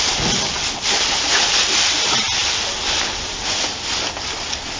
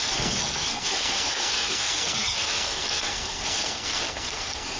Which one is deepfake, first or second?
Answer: second